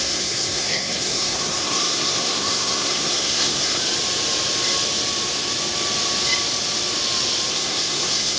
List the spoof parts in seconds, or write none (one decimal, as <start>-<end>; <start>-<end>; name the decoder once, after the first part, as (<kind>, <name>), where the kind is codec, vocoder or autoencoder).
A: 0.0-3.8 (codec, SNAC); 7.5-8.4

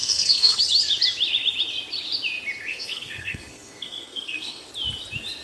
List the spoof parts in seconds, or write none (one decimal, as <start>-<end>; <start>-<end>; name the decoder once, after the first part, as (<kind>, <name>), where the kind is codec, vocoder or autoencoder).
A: 0.0-0.6 (codec, SNAC); 2.7-4.7

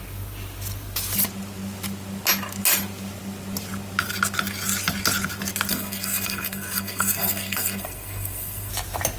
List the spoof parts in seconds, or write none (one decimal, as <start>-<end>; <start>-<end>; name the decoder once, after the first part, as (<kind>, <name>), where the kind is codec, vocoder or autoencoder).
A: 5.7-8.7 (codec, SNAC)